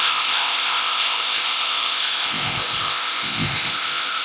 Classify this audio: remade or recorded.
remade